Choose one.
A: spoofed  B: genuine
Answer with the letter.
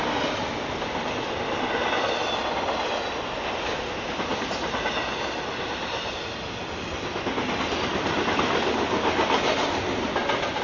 B